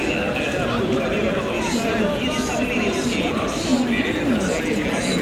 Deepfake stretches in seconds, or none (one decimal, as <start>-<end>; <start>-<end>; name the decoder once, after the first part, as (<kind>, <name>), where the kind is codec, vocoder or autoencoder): none